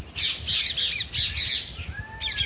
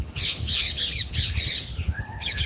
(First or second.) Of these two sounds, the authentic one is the first